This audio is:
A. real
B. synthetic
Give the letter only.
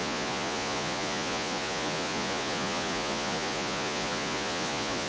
B